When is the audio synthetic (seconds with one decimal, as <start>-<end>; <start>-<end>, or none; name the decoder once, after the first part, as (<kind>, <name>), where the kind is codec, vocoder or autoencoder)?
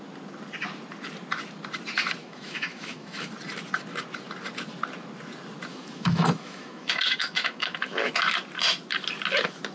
2.2-3.3 (autoencoder, DAC-VAE); 5.7-8.1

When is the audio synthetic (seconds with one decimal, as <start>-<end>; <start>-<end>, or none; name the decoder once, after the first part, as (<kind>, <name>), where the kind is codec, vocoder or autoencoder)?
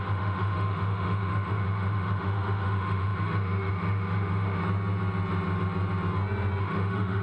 0.0-4.6 (autoencoder, DAC-VAE); 6.6-7.2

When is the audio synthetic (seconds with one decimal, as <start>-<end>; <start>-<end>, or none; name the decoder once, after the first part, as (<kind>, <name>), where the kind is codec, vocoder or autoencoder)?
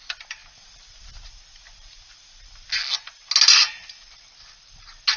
none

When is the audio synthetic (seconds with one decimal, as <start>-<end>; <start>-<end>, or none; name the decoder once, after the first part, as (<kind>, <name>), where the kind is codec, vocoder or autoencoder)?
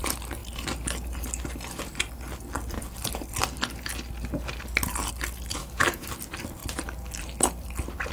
5.6-6.1 (autoencoder, DAC-VAE)